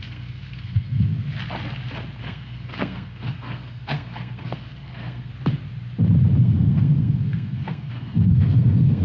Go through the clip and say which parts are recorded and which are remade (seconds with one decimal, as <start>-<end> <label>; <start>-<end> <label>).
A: 0.0-1.3 remade; 1.3-2.2 recorded; 2.2-5.3 remade; 5.3-6.4 recorded; 6.4-9.0 remade